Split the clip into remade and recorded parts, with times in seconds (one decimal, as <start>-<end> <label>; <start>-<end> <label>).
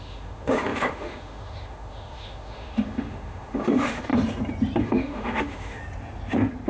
0.0-4.1 remade; 4.1-4.8 recorded; 4.8-5.8 remade; 5.8-6.7 recorded